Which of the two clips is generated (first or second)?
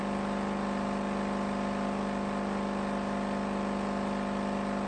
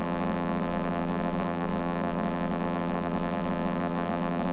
second